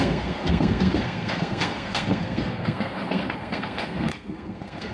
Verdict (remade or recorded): remade